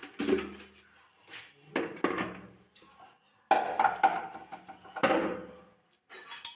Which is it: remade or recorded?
recorded